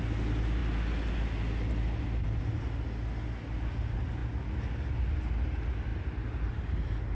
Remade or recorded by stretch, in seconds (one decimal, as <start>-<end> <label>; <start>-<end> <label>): 0.0-7.1 recorded